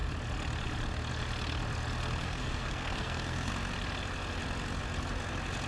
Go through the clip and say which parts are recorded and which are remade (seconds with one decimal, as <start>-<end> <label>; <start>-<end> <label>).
0.0-2.2 recorded; 2.2-3.5 remade; 3.5-5.7 recorded